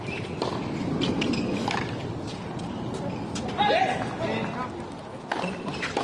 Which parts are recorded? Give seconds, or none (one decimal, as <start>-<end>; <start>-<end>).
0.0-6.0